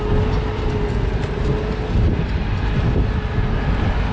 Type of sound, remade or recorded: recorded